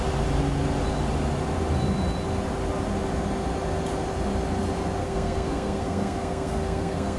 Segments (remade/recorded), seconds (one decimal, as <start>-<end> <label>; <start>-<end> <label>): 0.0-5.0 recorded; 5.0-7.2 remade